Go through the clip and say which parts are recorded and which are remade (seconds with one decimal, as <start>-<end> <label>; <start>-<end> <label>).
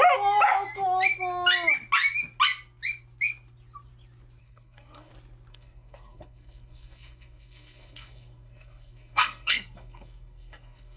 0.0-4.4 recorded; 4.4-5.1 remade; 5.1-5.5 recorded; 5.5-11.0 remade